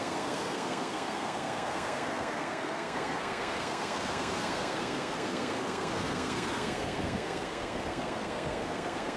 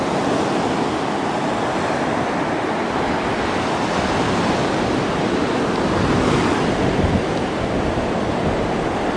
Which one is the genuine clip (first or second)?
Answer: second